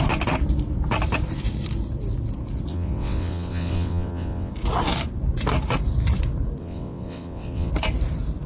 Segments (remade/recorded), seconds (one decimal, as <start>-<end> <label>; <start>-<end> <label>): 0.0-2.7 recorded; 2.7-4.5 remade; 4.5-6.6 recorded; 6.6-7.7 remade; 7.7-8.5 recorded